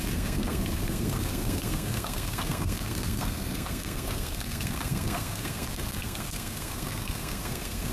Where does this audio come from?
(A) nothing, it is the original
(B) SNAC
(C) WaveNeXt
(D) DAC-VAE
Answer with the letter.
B